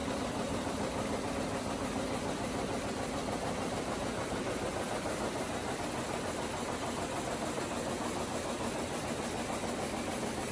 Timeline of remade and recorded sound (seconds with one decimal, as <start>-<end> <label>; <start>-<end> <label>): 0.0-1.3 remade; 1.3-10.5 recorded